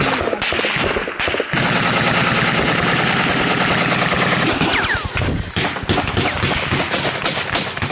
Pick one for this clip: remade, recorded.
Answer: recorded